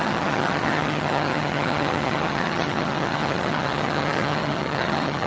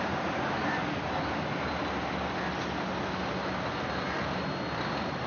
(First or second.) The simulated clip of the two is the first